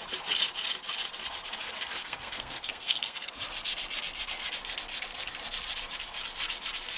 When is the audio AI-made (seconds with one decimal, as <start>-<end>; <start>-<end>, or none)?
2.0-3.3